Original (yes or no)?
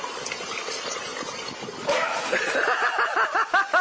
yes